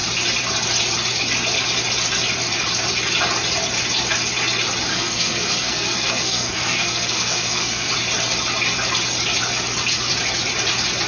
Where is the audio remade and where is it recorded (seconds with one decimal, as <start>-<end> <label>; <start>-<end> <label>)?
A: 0.0-4.9 recorded; 4.9-7.9 remade; 7.9-11.1 recorded